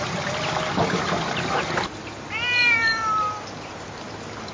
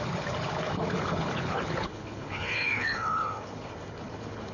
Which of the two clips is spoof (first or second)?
second